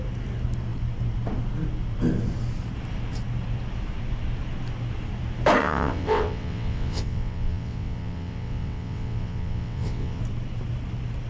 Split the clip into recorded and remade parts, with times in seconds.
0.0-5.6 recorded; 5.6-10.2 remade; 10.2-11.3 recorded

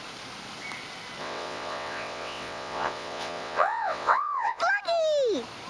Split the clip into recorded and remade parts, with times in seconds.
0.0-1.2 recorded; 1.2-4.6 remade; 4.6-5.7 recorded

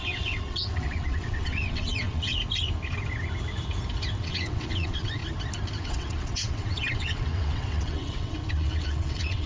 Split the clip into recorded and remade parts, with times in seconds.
0.0-2.3 remade; 2.3-4.2 recorded; 4.2-5.2 remade; 5.2-5.8 recorded; 5.8-9.5 remade